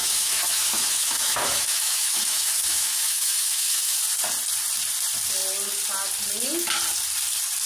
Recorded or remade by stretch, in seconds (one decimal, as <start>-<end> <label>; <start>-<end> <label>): 0.0-4.0 remade; 4.0-7.7 recorded